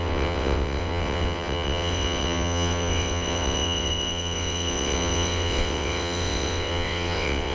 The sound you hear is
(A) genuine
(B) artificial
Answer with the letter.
B